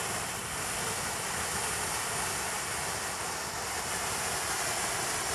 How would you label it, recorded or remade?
recorded